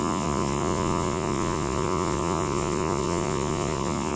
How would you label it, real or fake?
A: fake